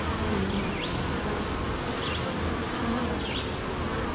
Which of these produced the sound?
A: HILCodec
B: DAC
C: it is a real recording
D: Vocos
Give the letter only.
C